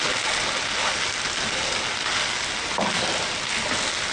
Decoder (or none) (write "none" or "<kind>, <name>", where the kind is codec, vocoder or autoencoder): none